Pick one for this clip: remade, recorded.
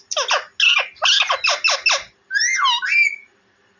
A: recorded